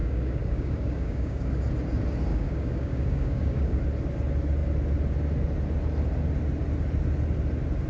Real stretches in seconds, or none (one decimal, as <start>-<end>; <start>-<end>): 1.6-2.3; 3.8-7.9

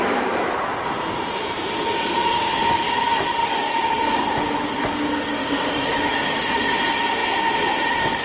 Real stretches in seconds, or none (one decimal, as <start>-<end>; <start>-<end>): 0.0-2.2; 3.0-3.4; 4.5-5.4; 6.4-8.2

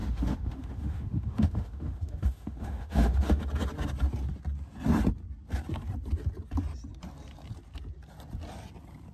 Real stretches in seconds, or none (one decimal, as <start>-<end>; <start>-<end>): 3.4-9.1

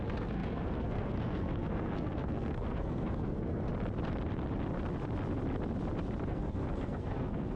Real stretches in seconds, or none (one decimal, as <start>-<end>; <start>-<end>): 3.7-6.3

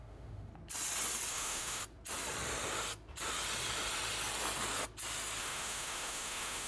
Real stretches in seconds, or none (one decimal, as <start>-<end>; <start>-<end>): 0.5-1.3; 1.8-5.4